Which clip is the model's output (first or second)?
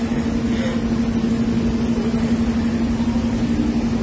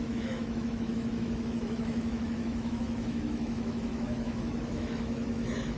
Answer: second